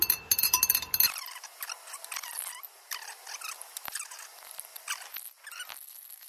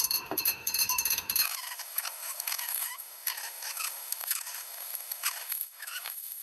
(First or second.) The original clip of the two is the first